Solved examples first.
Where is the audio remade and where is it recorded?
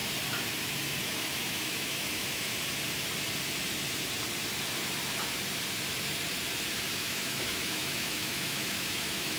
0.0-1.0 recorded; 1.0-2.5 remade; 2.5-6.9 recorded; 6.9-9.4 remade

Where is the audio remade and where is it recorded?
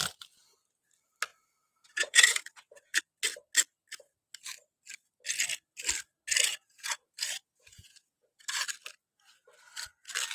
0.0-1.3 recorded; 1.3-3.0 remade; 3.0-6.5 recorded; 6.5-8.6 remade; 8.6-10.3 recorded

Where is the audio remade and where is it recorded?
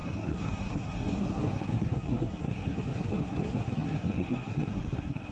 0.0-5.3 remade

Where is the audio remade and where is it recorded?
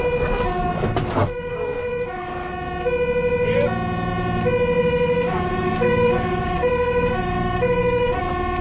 0.0-1.2 recorded; 1.2-2.5 remade; 2.5-4.8 recorded; 4.8-8.2 remade; 8.2-8.6 recorded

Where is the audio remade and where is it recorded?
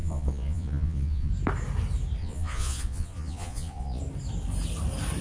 0.0-1.3 remade; 1.3-2.2 recorded; 2.2-4.0 remade; 4.0-5.2 recorded